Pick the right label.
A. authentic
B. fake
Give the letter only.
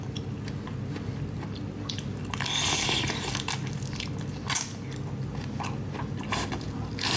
A